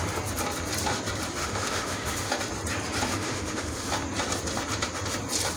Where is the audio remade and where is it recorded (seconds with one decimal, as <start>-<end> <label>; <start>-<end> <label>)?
0.0-1.4 recorded; 1.4-2.3 remade; 2.3-3.1 recorded; 3.1-3.9 remade; 3.9-5.6 recorded